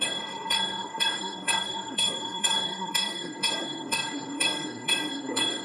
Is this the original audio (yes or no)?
no